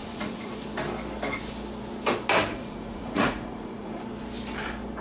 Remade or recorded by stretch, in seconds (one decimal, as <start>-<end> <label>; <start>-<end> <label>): 0.0-0.5 remade; 0.5-2.5 recorded; 2.5-4.0 remade; 4.0-5.0 recorded